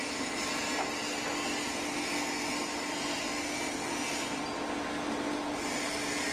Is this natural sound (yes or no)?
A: yes